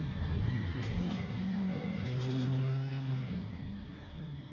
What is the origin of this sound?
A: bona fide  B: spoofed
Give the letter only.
B